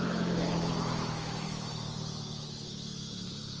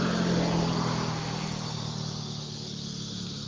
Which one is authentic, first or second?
second